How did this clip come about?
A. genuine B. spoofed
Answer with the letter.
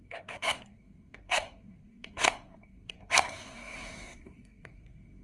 B